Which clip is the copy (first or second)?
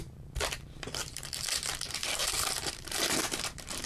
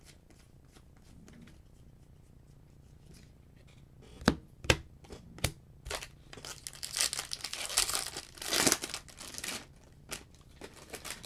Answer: first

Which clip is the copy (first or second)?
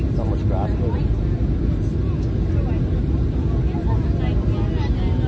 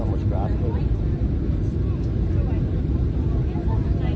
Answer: second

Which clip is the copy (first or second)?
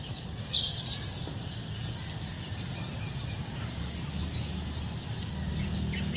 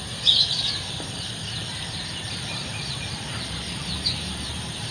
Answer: second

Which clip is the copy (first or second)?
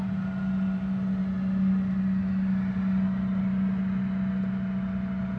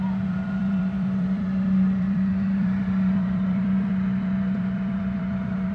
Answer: second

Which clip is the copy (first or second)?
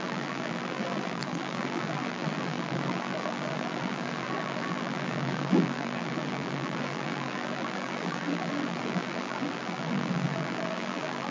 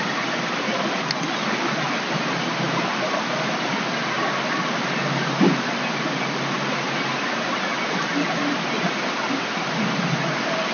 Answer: first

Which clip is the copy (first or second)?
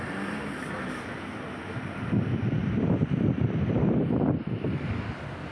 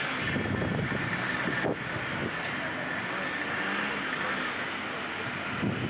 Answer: first